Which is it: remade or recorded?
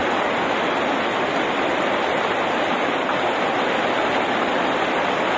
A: recorded